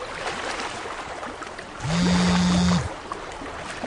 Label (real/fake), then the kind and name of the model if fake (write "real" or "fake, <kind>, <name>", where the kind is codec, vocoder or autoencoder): real